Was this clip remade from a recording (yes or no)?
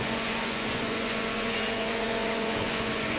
yes